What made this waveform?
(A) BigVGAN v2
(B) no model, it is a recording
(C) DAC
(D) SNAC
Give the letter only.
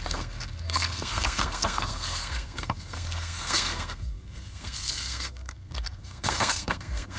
D